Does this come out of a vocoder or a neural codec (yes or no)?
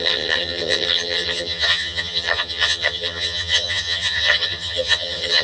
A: yes